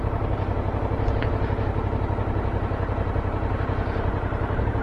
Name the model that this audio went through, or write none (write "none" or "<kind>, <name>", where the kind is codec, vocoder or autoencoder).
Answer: none